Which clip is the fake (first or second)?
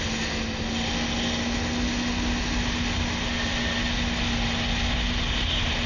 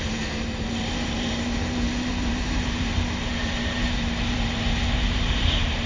second